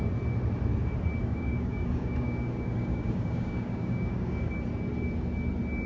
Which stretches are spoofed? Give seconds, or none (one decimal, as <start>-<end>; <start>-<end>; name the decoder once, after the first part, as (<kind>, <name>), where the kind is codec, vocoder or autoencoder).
1.2-4.5 (codec, DAC)